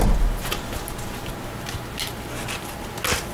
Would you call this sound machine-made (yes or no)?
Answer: no